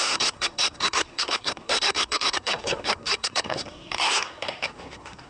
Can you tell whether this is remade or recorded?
remade